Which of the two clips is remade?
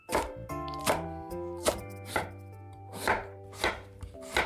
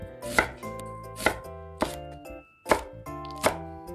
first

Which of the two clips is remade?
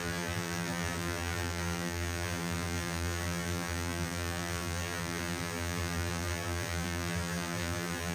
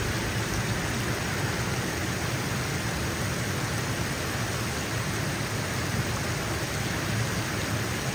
first